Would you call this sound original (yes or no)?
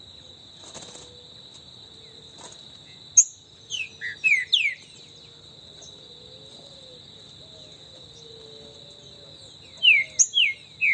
yes